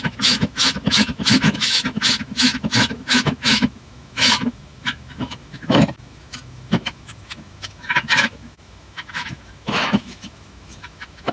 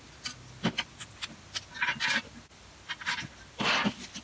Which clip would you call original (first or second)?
second